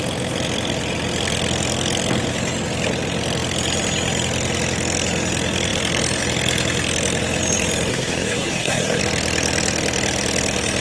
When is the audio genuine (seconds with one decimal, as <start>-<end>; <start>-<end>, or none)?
0.0-7.9; 9.0-10.8